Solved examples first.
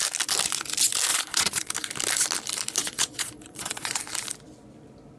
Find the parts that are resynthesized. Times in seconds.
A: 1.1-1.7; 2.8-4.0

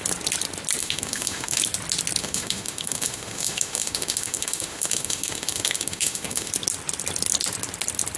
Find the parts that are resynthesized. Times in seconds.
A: 0.8-1.6; 2.2-6.5

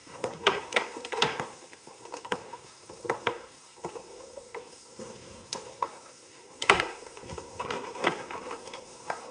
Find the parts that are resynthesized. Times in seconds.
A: 0.0-9.3